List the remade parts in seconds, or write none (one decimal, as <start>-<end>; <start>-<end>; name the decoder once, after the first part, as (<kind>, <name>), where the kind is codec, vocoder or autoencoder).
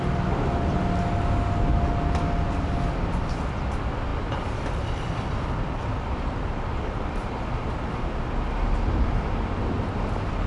none